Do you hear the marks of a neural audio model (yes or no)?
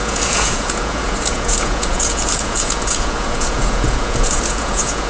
yes